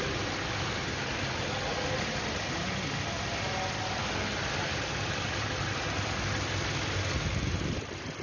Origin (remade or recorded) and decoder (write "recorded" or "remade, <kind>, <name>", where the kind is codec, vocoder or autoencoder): recorded